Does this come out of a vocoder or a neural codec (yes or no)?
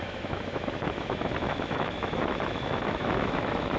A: yes